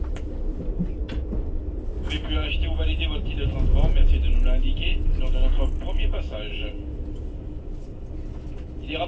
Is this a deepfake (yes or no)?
no